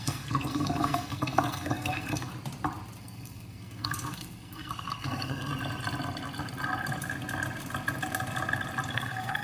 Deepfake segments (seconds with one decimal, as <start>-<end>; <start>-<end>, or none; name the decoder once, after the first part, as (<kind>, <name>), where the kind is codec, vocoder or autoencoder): 0.0-2.3 (codec, SNAC); 3.0-5.5; 8.9-9.4